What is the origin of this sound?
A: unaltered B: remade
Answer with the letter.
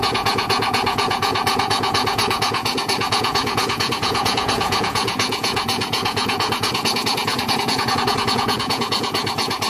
B